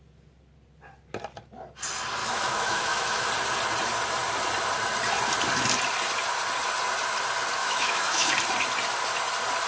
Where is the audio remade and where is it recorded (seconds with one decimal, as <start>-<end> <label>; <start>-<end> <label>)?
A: 0.0-2.2 recorded; 2.2-3.3 remade; 3.3-7.6 recorded; 7.6-8.3 remade; 8.3-9.7 recorded